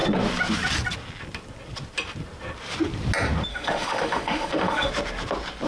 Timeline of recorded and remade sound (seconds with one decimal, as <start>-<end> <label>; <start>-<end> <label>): 0.0-3.5 recorded; 3.5-4.9 remade; 4.9-5.7 recorded